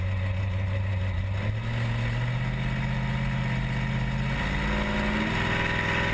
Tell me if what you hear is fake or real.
real